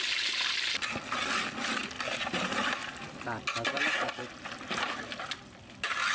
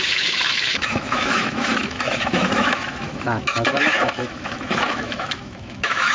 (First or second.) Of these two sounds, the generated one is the second